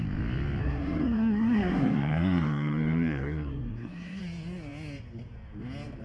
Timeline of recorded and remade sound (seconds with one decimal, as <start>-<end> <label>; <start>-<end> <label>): 0.0-0.6 recorded; 0.6-4.2 remade; 4.2-6.0 recorded